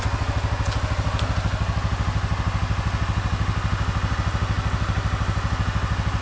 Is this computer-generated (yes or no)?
no